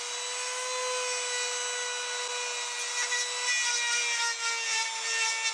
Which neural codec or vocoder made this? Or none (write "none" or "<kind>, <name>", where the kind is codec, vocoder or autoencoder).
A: none